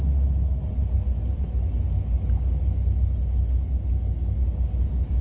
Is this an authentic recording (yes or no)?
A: yes